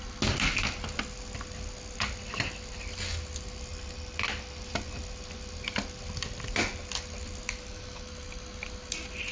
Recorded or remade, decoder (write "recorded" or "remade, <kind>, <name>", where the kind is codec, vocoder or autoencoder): recorded